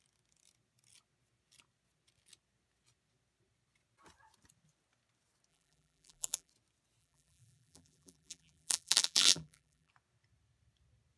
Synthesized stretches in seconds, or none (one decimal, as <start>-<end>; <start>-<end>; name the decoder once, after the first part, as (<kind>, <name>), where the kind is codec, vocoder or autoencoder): 5.5-6.5 (vocoder, BigVGAN v2); 7.0-9.9